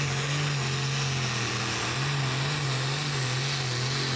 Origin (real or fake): real